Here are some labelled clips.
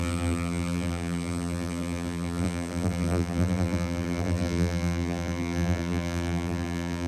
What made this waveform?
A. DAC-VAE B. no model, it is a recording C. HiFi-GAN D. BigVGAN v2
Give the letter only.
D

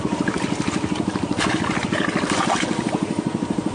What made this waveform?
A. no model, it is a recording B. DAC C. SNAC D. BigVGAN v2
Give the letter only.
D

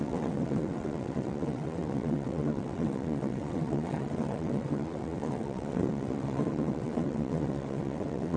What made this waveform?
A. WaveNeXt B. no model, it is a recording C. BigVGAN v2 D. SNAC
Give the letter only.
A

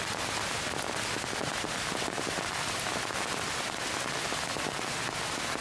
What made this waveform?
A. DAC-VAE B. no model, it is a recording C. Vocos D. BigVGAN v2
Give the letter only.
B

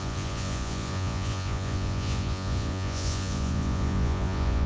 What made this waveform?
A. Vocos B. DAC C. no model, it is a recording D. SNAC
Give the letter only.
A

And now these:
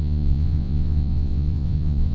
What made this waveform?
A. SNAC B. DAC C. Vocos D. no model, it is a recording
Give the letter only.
C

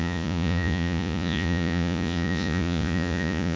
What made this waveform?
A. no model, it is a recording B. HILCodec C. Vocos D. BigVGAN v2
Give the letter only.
C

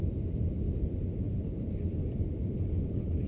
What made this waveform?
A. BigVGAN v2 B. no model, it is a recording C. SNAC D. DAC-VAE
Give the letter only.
A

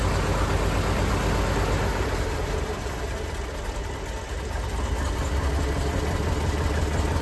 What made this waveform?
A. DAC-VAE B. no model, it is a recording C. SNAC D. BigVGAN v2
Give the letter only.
B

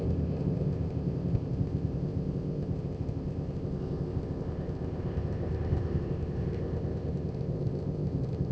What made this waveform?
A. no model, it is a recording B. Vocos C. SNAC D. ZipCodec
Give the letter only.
D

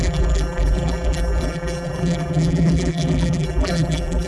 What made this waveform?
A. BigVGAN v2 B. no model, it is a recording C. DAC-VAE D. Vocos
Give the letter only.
A